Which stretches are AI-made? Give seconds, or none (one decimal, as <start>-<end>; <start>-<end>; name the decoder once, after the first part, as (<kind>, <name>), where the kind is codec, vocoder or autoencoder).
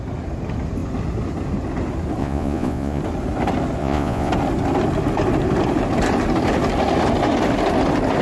2.2-3.0 (vocoder, Vocos); 3.8-4.3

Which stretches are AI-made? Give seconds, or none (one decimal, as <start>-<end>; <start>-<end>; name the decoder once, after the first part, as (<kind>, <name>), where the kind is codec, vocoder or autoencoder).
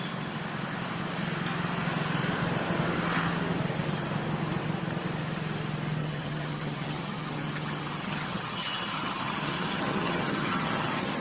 6.0-11.2 (vocoder, HiFi-GAN)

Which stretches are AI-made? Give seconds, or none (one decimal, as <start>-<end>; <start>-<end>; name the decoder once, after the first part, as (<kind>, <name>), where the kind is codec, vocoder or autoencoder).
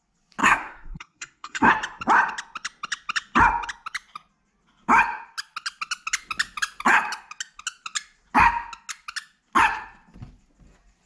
0.4-1.7 (codec, SNAC)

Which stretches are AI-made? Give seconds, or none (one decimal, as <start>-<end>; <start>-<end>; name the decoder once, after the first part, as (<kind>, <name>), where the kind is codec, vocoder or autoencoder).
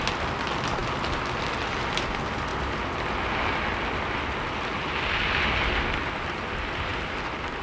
none